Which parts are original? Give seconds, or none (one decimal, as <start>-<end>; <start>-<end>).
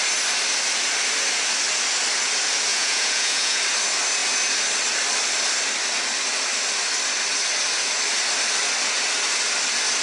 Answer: 0.0-2.7; 3.6-10.0